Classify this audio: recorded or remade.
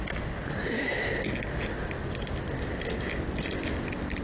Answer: recorded